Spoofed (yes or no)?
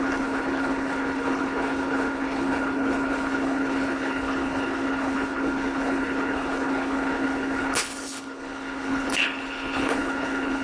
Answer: yes